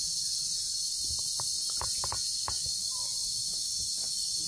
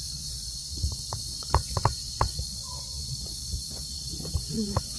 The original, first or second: first